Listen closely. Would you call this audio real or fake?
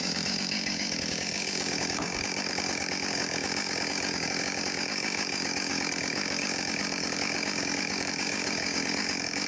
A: fake